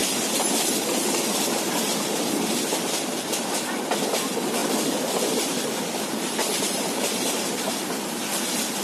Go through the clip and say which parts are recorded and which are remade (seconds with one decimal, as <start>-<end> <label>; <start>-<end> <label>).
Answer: 0.0-3.8 remade; 3.8-4.6 recorded; 4.6-5.7 remade; 5.7-6.4 recorded; 6.4-8.1 remade; 8.1-8.8 recorded